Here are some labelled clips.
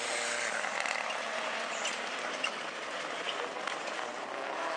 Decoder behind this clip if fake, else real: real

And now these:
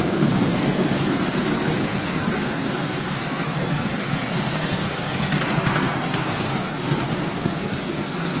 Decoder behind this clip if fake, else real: fake, codec, SNAC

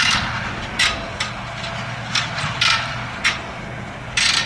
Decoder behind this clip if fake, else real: real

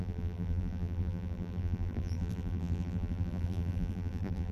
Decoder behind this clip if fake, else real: fake, vocoder, BigVGAN v2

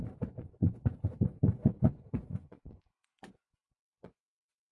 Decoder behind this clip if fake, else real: fake, vocoder, Vocos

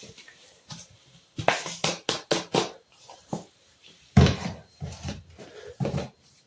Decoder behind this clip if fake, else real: fake, vocoder, BigVGAN v2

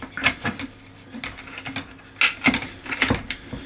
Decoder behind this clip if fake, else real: real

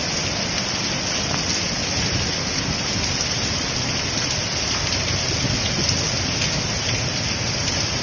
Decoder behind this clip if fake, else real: real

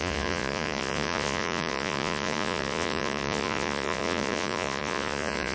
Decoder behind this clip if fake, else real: fake, vocoder, Vocos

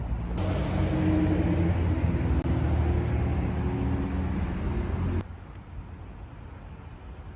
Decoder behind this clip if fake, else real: real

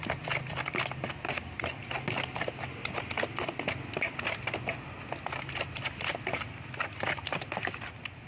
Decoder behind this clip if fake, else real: real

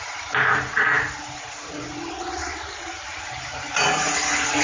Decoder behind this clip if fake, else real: real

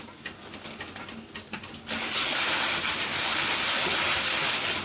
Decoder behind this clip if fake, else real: real